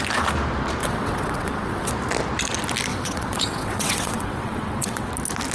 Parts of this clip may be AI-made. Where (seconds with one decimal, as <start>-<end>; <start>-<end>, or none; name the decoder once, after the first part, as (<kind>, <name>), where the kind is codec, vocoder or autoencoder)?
0.8-1.9 (vocoder, WaveNeXt); 2.9-5.1